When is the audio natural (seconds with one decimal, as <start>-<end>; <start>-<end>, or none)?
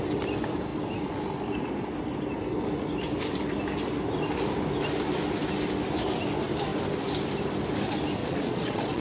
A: 0.0-8.2